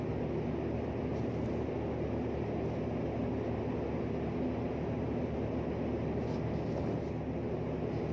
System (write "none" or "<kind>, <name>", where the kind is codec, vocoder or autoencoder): none